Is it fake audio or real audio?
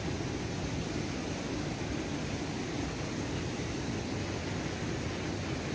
real